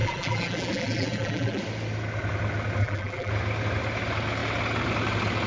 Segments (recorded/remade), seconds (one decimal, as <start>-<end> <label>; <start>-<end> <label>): 0.0-1.6 remade; 1.6-2.8 recorded; 2.8-3.3 remade; 3.3-5.5 recorded